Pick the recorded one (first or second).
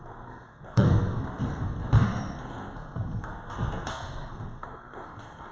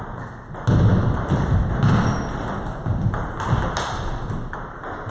second